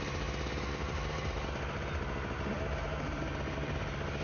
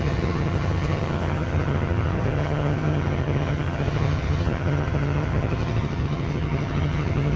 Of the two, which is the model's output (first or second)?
second